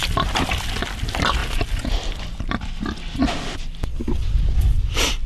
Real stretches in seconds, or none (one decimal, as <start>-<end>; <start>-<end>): 1.4-4.6